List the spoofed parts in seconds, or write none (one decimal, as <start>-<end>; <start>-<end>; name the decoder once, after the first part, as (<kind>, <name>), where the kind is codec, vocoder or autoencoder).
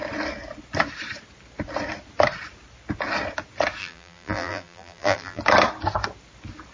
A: 3.8-5.4 (vocoder, BigVGAN v2)